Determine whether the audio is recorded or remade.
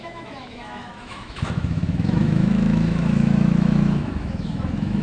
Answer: remade